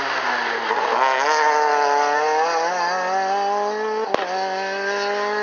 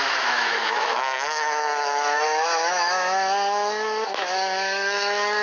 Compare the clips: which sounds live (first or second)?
first